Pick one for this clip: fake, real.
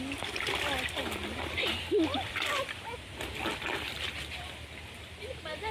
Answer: fake